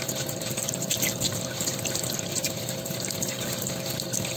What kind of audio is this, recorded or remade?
remade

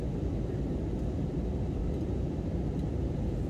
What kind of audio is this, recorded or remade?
remade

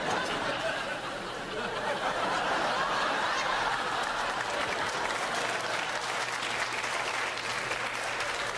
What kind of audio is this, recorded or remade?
remade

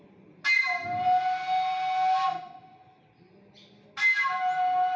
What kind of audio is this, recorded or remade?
recorded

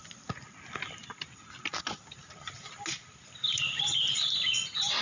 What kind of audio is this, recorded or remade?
recorded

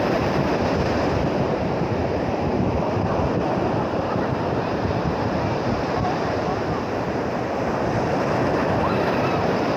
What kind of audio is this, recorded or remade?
remade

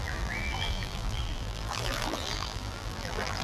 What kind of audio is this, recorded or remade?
remade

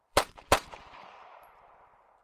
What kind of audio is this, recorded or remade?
remade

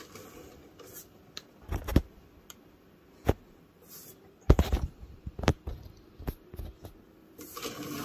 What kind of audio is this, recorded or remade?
recorded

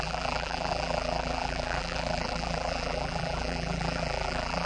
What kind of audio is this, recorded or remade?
remade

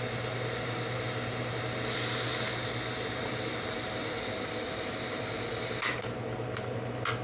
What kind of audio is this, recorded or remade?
recorded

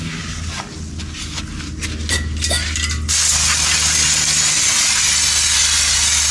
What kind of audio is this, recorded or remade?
recorded